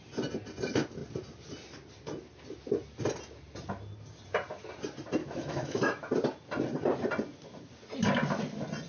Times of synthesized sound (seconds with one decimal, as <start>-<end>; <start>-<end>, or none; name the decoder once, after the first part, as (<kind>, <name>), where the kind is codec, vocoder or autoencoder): 5.2-6.1 (autoencoder, DAC-VAE)